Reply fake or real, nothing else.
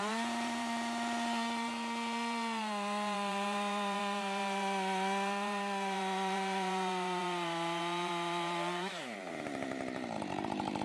fake